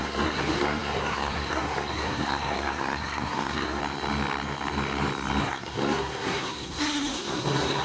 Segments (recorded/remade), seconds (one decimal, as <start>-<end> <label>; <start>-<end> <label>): 0.0-3.8 remade; 3.8-5.4 recorded; 5.4-7.8 remade